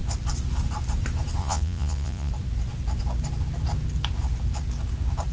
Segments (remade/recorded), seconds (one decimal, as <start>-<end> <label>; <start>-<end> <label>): 0.0-1.4 recorded; 1.4-2.3 remade; 2.3-5.3 recorded